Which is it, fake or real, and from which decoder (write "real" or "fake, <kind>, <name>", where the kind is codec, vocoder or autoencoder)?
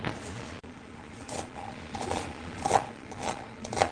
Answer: fake, vocoder, Vocos